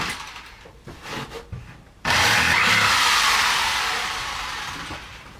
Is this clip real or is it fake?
real